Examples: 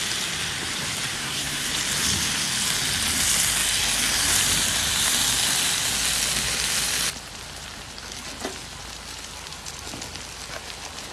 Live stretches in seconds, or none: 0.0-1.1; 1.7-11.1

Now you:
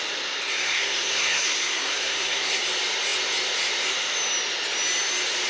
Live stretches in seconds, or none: 0.0-0.5; 2.6-5.5

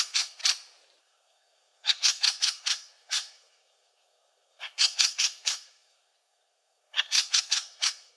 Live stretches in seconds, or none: 0.4-1.0

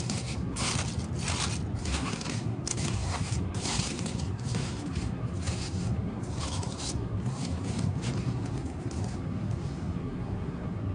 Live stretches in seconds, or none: 0.7-1.8

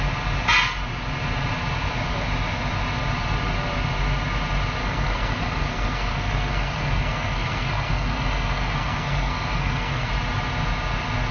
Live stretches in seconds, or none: 0.0-4.8; 10.1-11.3

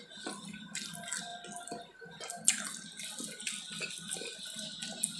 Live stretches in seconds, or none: 0.0-5.2